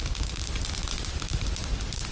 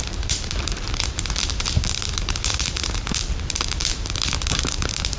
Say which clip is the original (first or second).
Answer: first